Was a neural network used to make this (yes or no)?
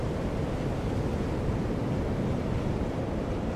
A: no